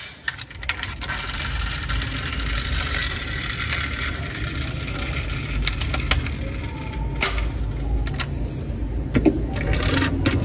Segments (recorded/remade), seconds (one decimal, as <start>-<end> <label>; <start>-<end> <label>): 0.0-3.0 recorded; 3.0-4.1 remade; 4.1-10.4 recorded